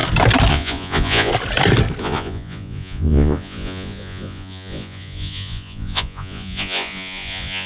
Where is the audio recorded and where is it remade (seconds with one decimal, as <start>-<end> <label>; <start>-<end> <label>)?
0.0-0.5 recorded; 0.5-1.3 remade; 1.3-2.0 recorded; 2.0-7.7 remade